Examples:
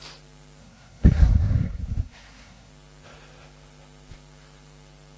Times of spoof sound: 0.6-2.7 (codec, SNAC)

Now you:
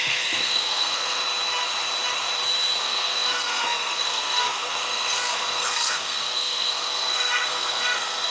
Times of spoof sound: 0.0-1.2 (codec, SNAC); 2.8-8.3

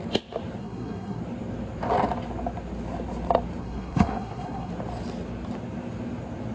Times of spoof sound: 0.6-1.2 (codec, SNAC); 3.6-4.7